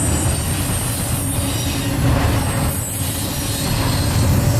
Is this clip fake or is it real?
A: real